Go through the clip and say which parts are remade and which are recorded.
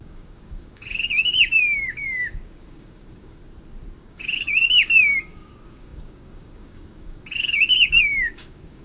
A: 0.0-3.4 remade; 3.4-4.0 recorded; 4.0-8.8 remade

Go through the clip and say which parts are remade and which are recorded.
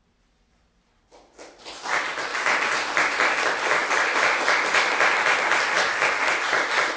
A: 0.0-7.0 recorded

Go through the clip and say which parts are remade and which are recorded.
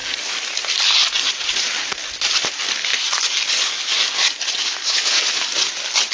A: 0.0-4.6 recorded; 4.6-5.5 remade; 5.5-6.1 recorded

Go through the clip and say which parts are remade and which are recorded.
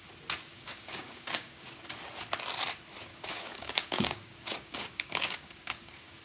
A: 0.0-0.5 recorded; 0.5-2.0 remade; 2.0-3.1 recorded; 3.1-6.2 remade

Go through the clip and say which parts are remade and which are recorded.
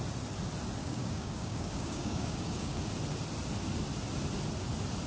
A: 0.0-0.8 recorded; 0.8-2.8 remade; 2.8-5.1 recorded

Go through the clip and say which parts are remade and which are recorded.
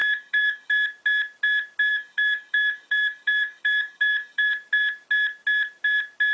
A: 0.0-0.7 remade; 0.7-1.9 recorded; 1.9-4.5 remade; 4.5-6.3 recorded